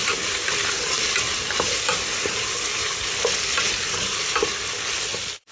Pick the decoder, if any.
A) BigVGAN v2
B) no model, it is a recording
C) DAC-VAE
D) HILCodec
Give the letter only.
A